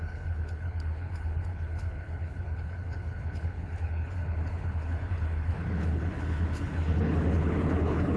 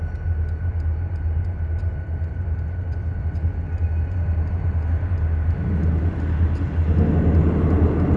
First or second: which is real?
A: second